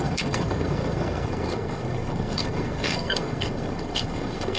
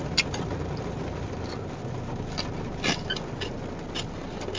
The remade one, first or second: first